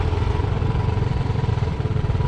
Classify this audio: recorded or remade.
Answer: remade